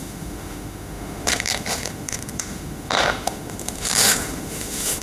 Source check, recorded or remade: remade